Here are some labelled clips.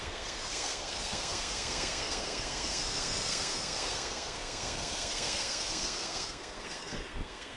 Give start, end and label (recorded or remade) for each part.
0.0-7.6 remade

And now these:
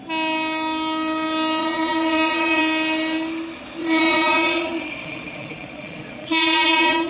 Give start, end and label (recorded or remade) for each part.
0.0-1.6 recorded; 1.6-2.6 remade; 2.6-3.8 recorded; 3.8-7.1 remade

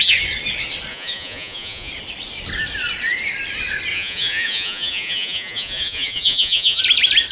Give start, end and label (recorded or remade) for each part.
0.0-0.9 recorded; 0.9-1.9 remade; 1.9-3.9 recorded; 3.9-6.8 remade; 6.8-7.3 recorded

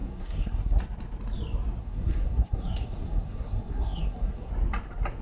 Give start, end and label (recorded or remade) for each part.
0.0-0.8 remade; 0.8-1.8 recorded; 1.8-4.5 remade; 4.5-5.2 recorded